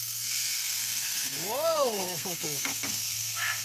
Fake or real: fake